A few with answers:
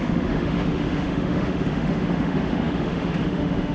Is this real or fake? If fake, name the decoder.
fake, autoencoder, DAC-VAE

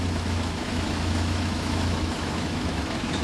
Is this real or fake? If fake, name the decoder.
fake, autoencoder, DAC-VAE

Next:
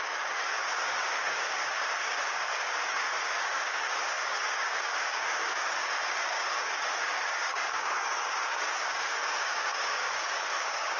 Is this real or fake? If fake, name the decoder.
fake, codec, DAC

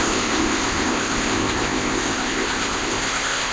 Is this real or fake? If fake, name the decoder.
fake, codec, ZipCodec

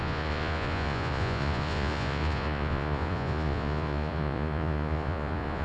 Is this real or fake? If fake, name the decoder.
fake, vocoder, Vocos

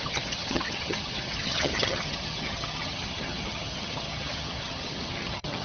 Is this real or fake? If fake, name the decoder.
fake, vocoder, HiFi-GAN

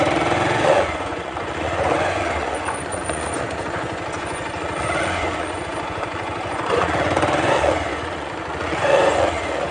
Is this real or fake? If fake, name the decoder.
fake, vocoder, Vocos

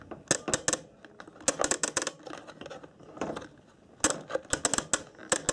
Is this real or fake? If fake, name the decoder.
real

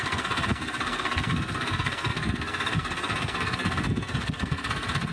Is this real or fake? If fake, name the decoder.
fake, codec, SNAC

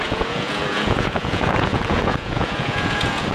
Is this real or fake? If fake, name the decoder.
fake, vocoder, Vocos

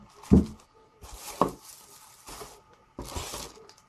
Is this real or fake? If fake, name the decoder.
real